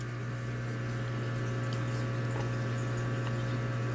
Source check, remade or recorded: recorded